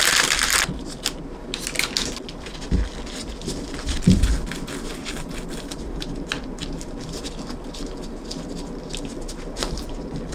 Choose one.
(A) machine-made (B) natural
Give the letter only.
B